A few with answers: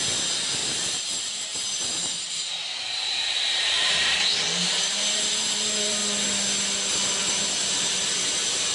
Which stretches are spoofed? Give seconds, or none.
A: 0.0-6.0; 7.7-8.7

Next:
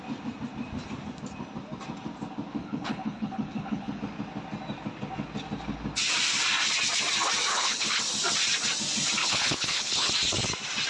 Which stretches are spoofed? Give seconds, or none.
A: 2.6-4.0; 7.5-8.0; 9.2-10.1

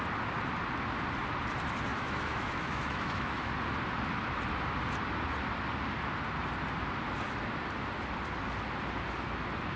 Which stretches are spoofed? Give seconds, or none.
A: 1.9-3.5

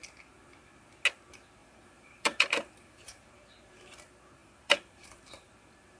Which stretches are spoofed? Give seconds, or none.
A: 1.6-3.3; 4.4-5.2

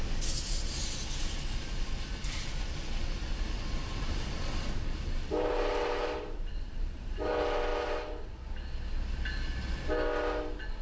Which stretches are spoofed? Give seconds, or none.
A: 3.8-7.3

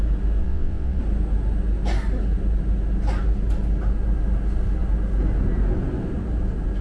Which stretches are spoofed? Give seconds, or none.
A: 0.4-1.0

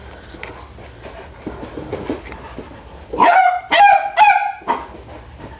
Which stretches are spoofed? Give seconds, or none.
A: none